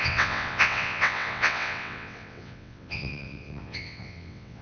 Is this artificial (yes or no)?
yes